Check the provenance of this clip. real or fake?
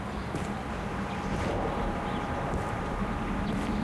fake